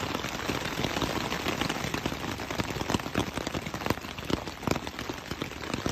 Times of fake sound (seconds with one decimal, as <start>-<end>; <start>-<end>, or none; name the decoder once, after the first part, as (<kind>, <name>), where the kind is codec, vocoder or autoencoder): none